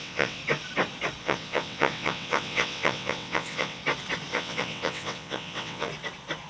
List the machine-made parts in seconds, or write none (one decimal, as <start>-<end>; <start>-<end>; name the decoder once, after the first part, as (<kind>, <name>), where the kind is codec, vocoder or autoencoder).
0.0-0.4 (vocoder, WaveNeXt); 1.2-3.8; 4.3-5.9